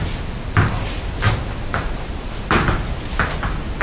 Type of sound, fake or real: real